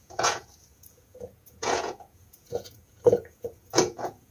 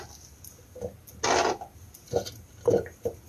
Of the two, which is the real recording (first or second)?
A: second